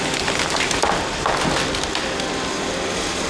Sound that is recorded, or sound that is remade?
recorded